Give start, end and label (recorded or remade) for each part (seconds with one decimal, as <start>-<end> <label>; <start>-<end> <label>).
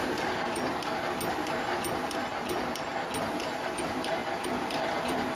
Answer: 0.0-0.7 remade; 0.7-1.3 recorded; 1.3-2.9 remade; 2.9-3.4 recorded; 3.4-5.4 remade